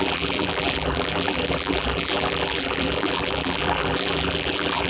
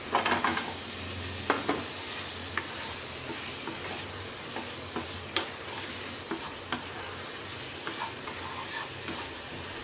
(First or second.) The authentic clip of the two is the second